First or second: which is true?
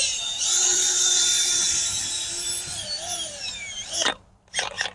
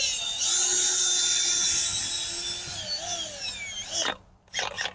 second